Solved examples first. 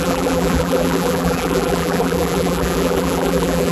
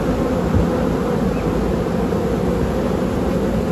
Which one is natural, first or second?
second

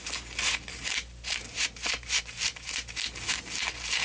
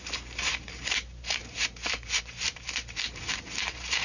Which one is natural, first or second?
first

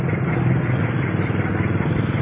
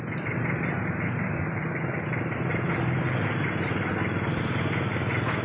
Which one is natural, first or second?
second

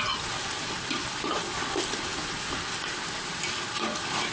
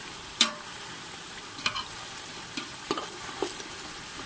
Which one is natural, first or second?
first